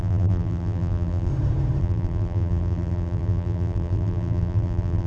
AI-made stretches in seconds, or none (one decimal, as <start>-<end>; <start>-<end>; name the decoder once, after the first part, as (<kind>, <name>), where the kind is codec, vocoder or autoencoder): 0.0-1.3 (vocoder, BigVGAN v2); 1.8-5.1